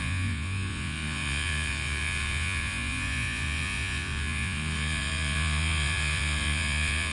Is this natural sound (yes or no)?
no